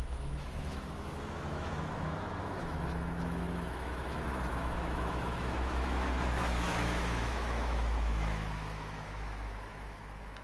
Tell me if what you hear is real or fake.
fake